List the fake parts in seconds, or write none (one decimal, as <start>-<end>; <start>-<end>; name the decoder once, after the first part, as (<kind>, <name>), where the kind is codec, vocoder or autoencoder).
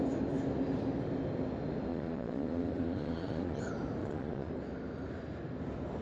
1.9-3.6 (vocoder, Vocos); 4.0-4.5